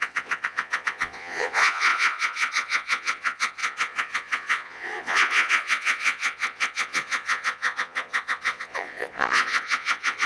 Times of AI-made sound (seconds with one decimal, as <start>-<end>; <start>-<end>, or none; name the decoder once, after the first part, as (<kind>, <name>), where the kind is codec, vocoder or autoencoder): 0.0-10.3 (vocoder, Vocos)